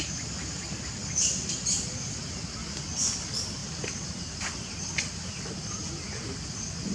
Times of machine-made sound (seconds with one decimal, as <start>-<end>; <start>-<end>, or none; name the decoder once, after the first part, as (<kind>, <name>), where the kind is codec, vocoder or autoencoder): none